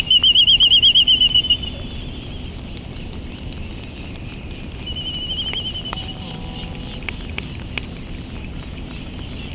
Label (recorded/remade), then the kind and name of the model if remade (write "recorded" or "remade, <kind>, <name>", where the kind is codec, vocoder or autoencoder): recorded